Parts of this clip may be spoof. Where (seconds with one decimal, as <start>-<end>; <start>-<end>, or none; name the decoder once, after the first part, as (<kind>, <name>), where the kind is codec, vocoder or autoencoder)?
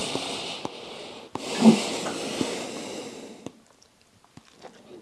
none